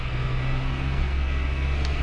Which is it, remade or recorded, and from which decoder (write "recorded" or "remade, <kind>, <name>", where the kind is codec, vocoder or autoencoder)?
remade, codec, SNAC